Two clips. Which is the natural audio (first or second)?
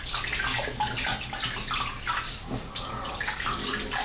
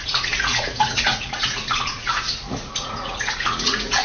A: first